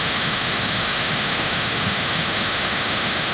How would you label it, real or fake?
fake